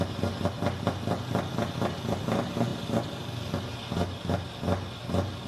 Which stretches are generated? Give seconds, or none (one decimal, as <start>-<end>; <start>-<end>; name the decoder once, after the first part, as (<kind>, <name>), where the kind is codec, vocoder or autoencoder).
none